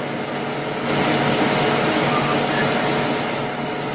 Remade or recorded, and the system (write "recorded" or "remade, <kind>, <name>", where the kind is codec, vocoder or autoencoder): recorded